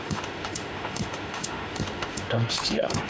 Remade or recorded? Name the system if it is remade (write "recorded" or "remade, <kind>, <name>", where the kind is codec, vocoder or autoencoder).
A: remade, autoencoder, DAC-VAE